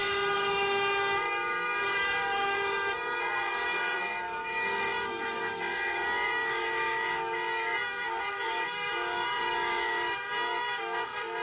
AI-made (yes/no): yes